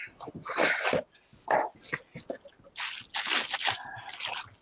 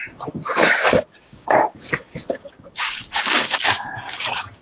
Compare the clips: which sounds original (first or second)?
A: first